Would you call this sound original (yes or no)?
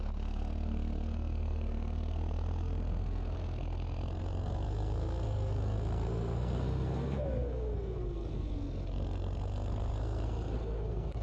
no